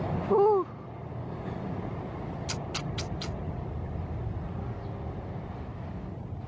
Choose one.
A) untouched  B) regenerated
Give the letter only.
A